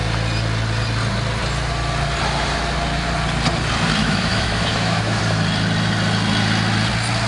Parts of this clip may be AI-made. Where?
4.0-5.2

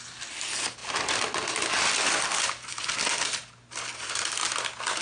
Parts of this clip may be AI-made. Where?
none

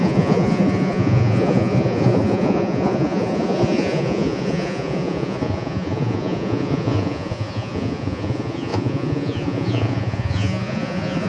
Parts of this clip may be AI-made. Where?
0.0-11.3

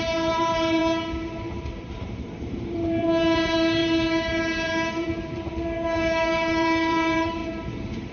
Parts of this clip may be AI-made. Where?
0.0-0.8; 1.7-8.1

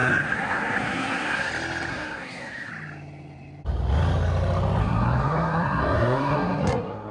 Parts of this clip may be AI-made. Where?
0.0-1.5; 1.9-2.7; 4.8-7.1

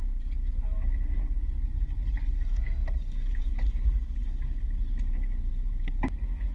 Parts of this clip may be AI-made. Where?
none